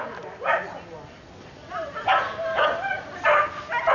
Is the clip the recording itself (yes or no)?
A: yes